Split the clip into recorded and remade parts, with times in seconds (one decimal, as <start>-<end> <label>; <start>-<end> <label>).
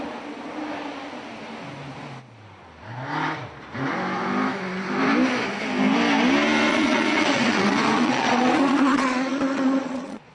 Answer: 0.0-6.7 recorded; 6.7-10.3 remade